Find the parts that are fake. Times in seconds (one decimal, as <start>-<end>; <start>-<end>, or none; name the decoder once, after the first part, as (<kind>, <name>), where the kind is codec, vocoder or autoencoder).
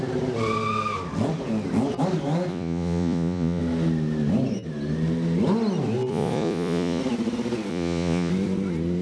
2.5-3.6 (vocoder, Vocos); 6.1-7.0; 7.7-8.3